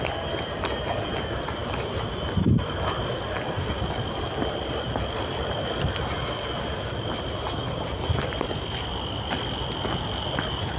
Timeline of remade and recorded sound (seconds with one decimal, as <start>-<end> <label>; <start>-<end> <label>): 0.0-10.8 recorded

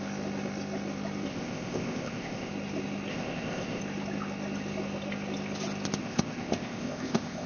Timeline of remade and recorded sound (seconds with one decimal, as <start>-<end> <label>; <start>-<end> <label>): 0.0-1.3 recorded; 1.3-2.5 remade; 2.5-3.1 recorded; 3.1-3.8 remade; 3.8-6.0 recorded; 6.0-7.5 remade

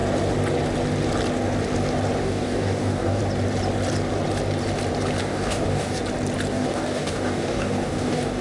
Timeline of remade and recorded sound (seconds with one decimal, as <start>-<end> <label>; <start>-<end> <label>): 0.0-2.2 recorded; 2.2-3.2 remade; 3.2-5.2 recorded; 5.2-6.0 remade; 6.0-6.5 recorded; 6.5-8.4 remade

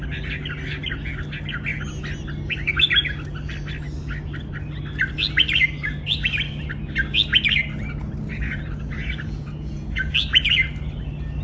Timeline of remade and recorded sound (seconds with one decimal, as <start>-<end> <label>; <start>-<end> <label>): 0.0-8.3 recorded; 8.3-10.1 remade; 10.1-11.4 recorded

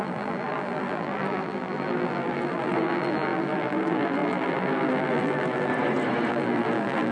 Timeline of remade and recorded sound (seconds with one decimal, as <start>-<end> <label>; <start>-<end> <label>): 0.0-5.7 remade; 5.7-6.3 recorded; 6.3-7.1 remade

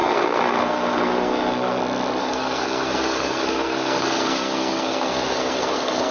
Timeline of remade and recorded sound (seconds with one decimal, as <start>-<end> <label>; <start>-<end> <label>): 0.0-1.8 remade; 1.8-2.2 recorded; 2.2-6.1 remade

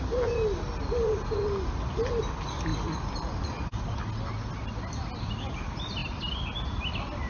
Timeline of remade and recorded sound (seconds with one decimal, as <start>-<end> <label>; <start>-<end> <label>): 0.0-2.7 recorded; 2.7-3.4 remade; 3.4-7.3 recorded